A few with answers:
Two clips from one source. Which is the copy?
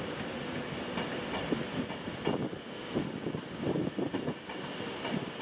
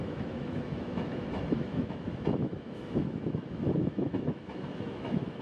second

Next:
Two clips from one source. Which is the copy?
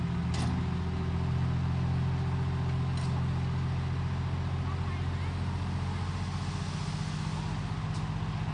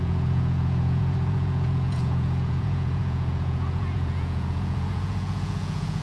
second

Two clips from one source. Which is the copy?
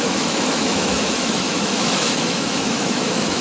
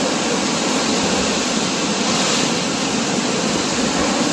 first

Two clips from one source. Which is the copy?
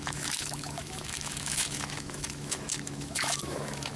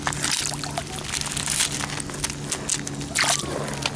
first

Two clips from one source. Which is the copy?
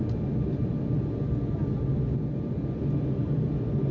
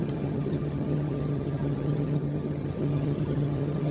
second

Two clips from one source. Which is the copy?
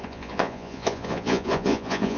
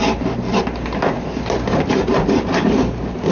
first